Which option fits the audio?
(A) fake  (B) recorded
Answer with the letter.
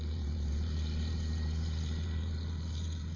A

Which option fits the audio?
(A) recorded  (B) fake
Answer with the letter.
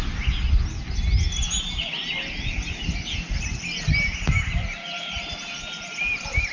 A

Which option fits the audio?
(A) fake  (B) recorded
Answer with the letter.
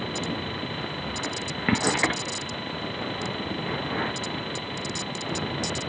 B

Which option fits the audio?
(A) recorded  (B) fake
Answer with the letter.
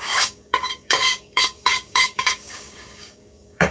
B